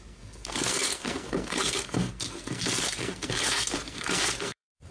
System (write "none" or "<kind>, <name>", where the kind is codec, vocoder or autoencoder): codec, SNAC